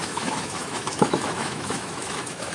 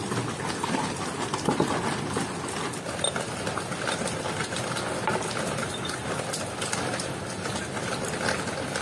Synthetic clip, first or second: first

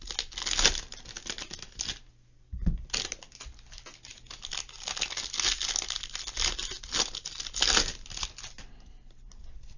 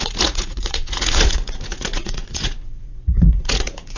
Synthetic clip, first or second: second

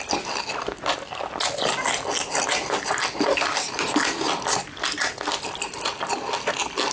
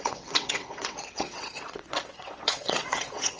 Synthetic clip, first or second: second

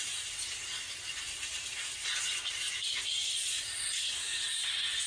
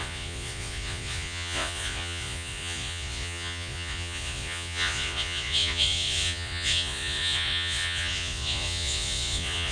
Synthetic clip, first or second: second